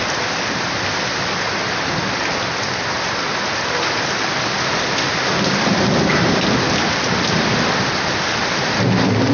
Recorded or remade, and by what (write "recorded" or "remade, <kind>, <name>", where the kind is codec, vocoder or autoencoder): recorded